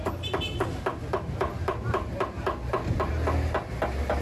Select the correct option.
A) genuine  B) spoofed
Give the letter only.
A